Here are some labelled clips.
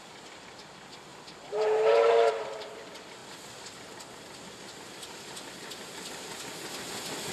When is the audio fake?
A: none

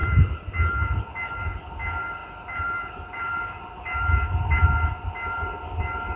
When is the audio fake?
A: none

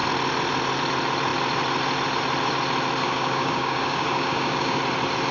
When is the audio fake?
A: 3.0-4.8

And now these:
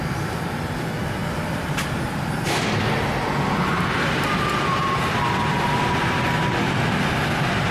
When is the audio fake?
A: 0.0-7.7

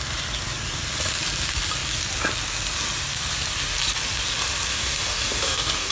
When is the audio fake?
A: 4.7-5.9

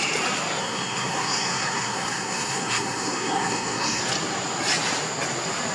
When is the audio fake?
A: 0.6-4.0

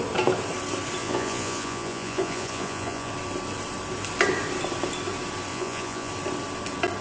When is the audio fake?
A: 1.0-3.1; 5.5-6.1